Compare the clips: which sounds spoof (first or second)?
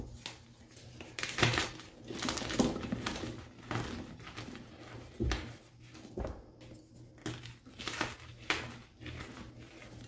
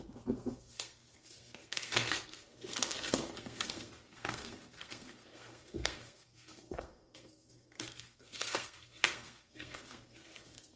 second